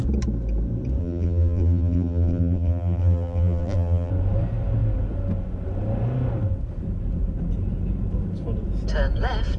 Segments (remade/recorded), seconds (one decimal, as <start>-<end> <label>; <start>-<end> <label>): 0.0-1.0 recorded; 1.0-4.1 remade; 4.1-9.6 recorded